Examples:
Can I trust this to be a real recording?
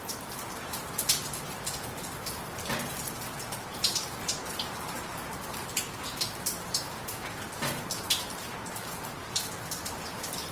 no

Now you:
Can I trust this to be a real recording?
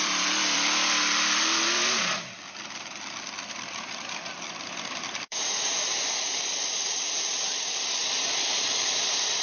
no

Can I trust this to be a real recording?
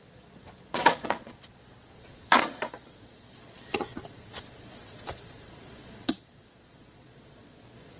no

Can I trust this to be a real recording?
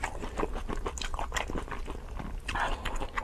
yes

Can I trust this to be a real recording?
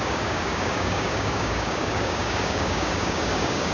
no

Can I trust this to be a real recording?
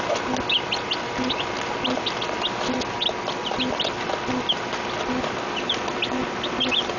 yes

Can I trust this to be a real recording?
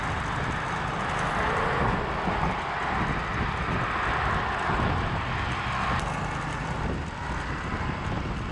yes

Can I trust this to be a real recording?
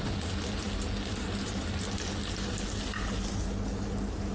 yes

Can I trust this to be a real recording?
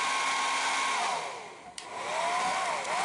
yes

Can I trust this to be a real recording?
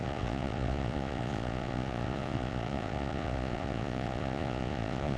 no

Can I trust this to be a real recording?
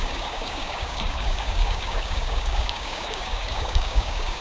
no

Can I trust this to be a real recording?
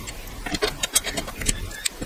yes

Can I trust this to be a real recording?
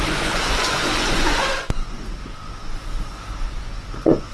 no